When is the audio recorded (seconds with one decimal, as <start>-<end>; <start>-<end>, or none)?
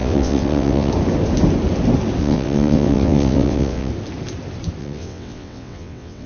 0.9-2.2; 3.9-4.8